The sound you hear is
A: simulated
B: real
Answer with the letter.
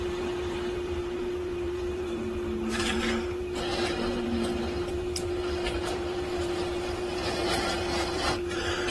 A